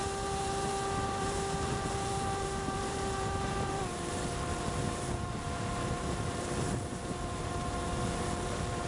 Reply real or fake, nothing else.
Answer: fake